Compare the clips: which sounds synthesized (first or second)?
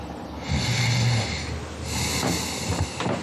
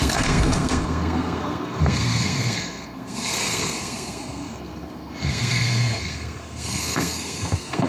second